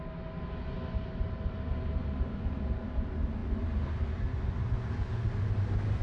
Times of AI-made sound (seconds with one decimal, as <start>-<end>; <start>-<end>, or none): none